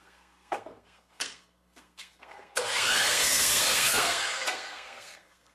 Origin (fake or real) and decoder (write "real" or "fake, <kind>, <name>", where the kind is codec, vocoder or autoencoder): fake, codec, SNAC